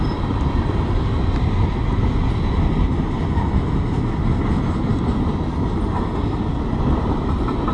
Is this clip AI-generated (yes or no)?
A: no